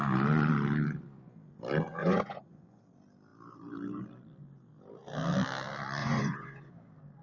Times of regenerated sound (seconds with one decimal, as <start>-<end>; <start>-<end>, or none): 2.0-2.8; 6.0-6.7

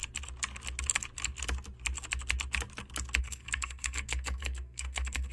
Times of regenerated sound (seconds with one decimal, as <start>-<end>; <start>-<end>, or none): 3.2-5.3

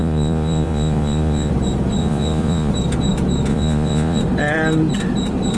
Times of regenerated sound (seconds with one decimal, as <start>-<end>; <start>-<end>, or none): 0.0-1.5; 2.0-2.7; 3.5-4.2

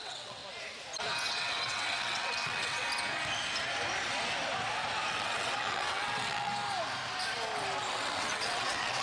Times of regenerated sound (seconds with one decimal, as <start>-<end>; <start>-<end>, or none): 0.0-0.4; 1.3-2.9; 5.1-6.5; 7.9-9.0

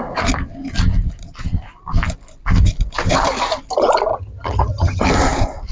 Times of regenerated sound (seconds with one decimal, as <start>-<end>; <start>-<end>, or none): 4.1-5.0

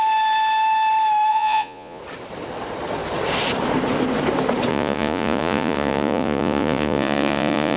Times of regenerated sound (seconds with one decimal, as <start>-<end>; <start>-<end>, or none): 1.3-2.0; 4.7-7.8

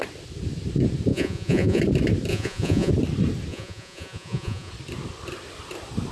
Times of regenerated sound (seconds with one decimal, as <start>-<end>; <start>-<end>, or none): 1.1-1.8; 2.3-2.9; 3.5-4.7

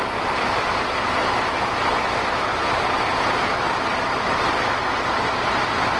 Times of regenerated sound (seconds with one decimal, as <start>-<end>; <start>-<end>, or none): none